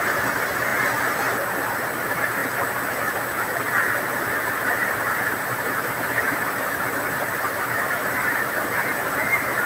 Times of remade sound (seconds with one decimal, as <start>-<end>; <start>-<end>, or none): 0.0-0.7; 2.0-2.4; 3.9-9.7